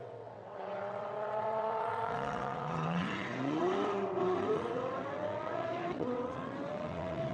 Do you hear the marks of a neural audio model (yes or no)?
yes